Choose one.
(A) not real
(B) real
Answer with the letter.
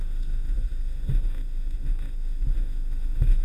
A